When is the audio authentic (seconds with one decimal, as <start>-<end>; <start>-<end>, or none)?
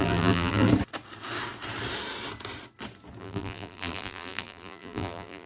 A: 0.7-3.2